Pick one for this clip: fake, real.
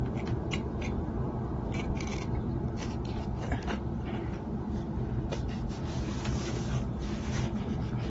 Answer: real